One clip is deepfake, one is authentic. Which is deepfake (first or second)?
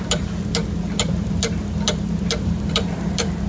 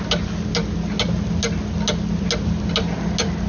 first